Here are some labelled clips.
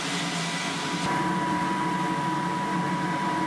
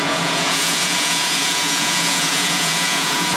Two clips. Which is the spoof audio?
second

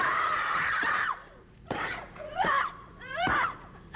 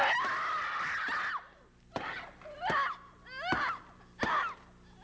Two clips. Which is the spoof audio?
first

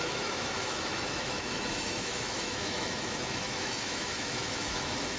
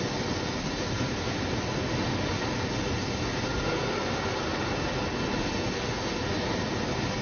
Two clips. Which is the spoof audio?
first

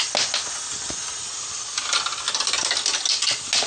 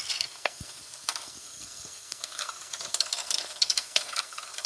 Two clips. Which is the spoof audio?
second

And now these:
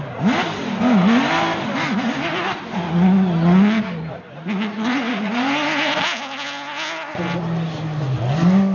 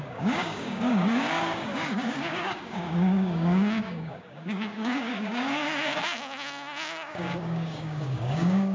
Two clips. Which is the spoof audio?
second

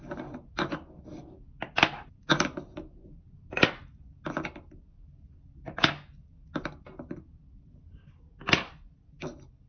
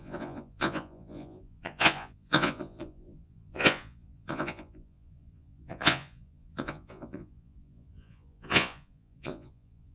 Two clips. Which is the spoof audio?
second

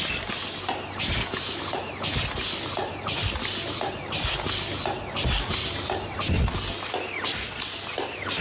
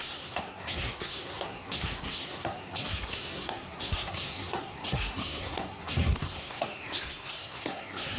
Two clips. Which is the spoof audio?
second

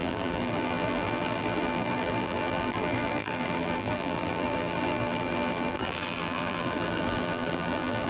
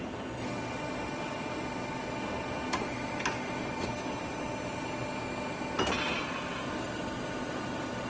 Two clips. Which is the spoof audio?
first